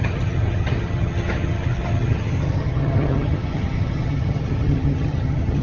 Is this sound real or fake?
fake